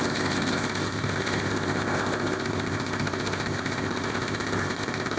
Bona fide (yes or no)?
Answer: no